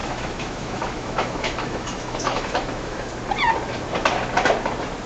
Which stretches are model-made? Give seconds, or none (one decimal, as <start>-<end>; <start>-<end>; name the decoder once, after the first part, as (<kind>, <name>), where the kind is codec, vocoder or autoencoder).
0.0-3.1 (autoencoder, DAC-VAE)